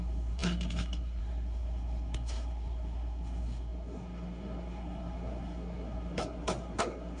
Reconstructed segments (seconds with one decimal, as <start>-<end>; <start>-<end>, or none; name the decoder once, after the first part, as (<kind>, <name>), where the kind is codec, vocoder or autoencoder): 0.0-7.2 (codec, SNAC)